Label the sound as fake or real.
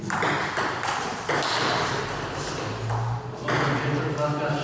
real